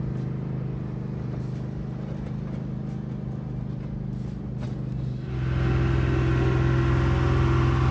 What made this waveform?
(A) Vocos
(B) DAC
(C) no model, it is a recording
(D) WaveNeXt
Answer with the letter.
C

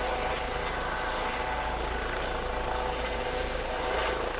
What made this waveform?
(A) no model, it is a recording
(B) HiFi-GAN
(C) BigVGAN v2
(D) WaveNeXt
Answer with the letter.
A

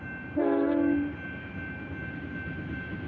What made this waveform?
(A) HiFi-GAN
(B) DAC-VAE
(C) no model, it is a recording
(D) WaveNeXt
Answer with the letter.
C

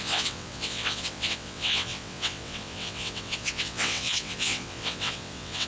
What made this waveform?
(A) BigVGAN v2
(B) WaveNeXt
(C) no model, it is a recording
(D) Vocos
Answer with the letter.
B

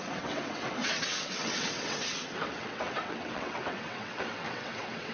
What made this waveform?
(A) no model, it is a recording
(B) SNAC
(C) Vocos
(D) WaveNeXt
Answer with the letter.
D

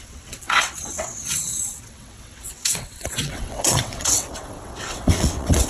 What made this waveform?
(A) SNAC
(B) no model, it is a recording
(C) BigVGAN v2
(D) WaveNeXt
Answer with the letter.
D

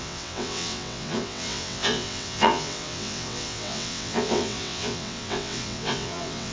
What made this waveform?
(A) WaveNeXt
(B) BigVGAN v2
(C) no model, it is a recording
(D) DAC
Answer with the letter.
A